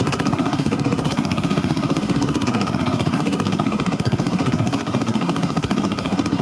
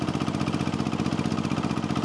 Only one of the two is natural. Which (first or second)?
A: second